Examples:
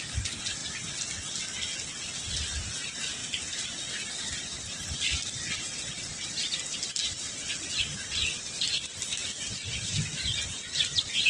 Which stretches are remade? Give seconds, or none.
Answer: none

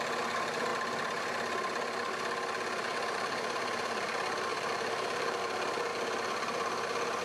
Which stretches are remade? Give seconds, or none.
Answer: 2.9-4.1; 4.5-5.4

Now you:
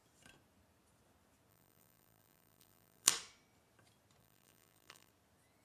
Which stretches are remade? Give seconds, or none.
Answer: 1.5-3.1; 4.2-5.1

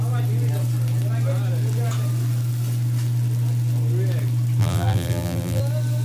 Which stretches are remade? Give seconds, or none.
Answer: 4.6-5.6

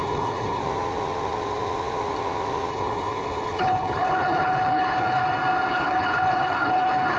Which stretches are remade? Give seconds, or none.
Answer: 0.0-0.6; 2.7-5.2; 5.7-7.2

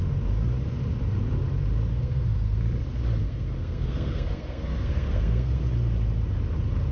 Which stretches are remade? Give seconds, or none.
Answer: 1.9-2.6; 3.2-5.6

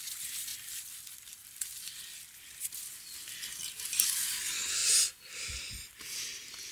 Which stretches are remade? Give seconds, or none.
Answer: 0.5-3.3; 4.8-5.7